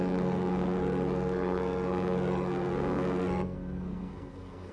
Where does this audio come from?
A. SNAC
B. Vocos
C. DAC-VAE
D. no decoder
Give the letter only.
A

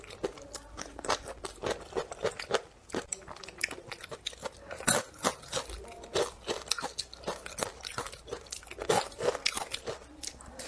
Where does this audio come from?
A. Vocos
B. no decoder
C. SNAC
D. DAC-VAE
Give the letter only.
B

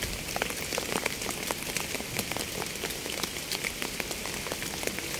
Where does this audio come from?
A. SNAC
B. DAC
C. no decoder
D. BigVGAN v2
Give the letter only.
C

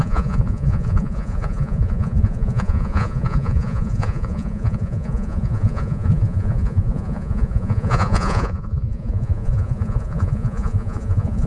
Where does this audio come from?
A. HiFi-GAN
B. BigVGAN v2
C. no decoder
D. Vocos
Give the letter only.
D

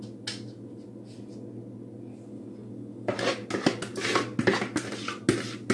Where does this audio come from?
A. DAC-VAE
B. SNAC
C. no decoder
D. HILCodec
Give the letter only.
C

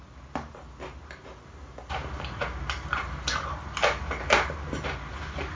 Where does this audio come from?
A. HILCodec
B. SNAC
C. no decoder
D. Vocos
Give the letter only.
C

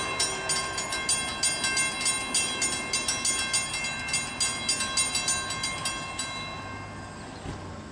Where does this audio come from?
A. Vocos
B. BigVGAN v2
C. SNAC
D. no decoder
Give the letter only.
D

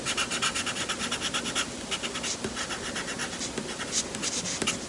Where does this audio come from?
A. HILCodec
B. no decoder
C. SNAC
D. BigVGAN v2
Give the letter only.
B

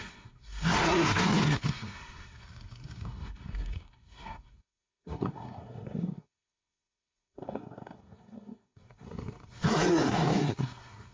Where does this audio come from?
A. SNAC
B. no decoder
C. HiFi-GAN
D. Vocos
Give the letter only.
A